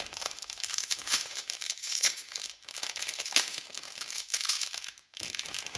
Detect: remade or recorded remade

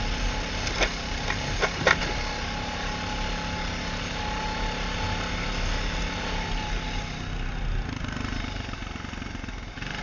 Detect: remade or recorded recorded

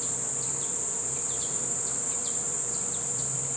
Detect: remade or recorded remade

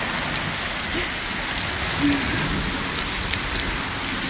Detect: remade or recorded recorded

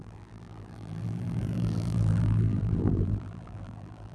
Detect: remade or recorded remade